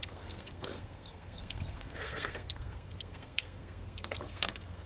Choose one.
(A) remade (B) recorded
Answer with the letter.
A